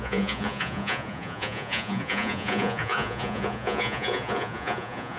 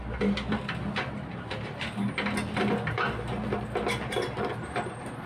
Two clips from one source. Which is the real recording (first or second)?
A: second